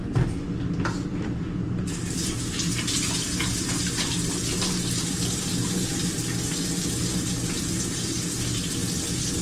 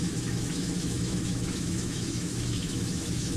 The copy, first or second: second